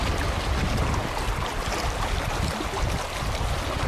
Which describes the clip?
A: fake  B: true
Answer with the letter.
B